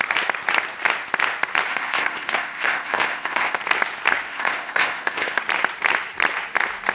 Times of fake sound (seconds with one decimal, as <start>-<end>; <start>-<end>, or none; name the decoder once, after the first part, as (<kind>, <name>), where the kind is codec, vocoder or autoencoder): 1.7-3.6 (codec, ZipCodec); 4.3-5.4